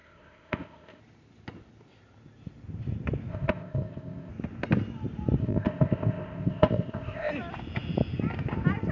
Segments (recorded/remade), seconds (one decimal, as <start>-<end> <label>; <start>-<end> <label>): 0.0-1.0 remade; 1.0-3.3 recorded; 3.3-4.3 remade; 4.3-5.4 recorded; 5.4-7.3 remade; 7.3-8.9 recorded